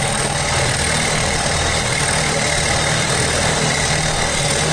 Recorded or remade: recorded